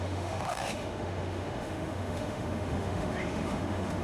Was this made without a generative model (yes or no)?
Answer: no